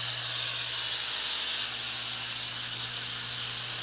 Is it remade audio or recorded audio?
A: recorded